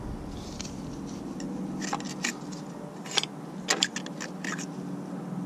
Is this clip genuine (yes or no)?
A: yes